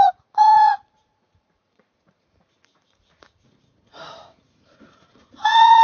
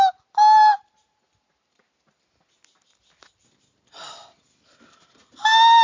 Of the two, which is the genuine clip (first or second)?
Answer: second